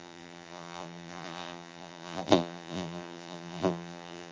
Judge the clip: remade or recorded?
remade